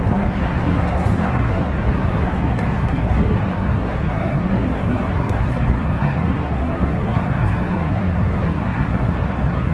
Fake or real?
fake